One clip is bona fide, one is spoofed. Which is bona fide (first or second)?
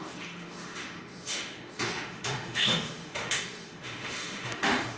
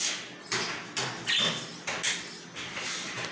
second